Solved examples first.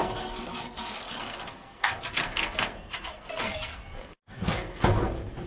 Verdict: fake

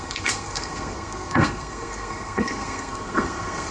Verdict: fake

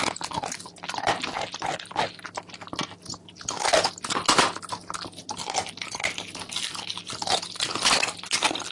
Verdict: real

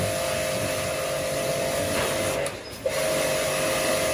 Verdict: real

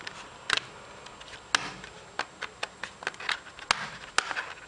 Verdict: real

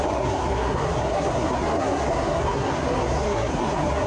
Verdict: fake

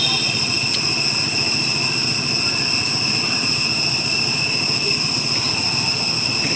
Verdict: real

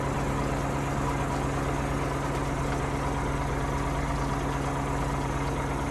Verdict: real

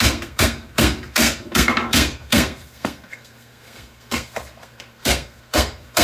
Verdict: fake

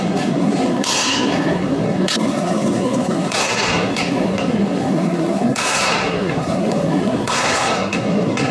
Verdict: fake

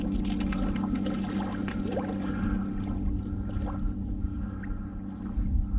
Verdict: real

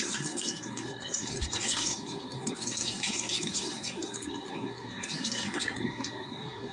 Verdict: fake